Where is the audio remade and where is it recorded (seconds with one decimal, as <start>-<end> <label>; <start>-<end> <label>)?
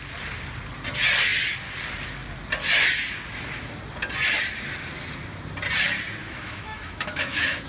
0.0-6.2 recorded; 6.2-7.7 remade